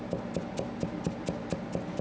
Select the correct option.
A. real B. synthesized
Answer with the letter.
A